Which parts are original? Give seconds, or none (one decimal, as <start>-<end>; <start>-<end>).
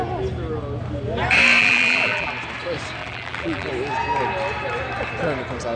0.0-1.6; 2.3-3.0; 3.7-5.8